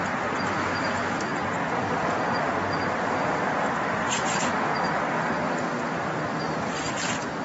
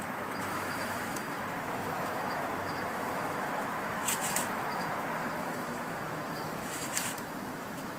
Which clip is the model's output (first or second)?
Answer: second